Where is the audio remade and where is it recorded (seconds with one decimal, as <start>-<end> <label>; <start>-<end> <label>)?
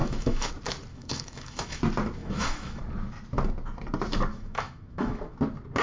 0.0-0.5 remade; 0.5-0.9 recorded; 0.9-1.8 remade; 1.8-2.2 recorded; 2.2-2.8 remade; 2.8-4.3 recorded; 4.3-5.2 remade; 5.2-5.8 recorded